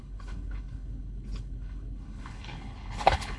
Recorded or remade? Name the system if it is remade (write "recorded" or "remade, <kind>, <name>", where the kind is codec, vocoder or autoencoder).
remade, codec, HILCodec